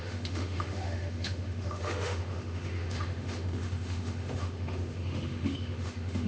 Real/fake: fake